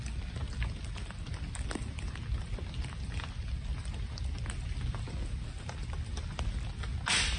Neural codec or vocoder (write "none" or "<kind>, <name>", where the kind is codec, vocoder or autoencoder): none